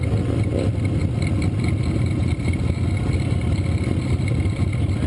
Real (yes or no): yes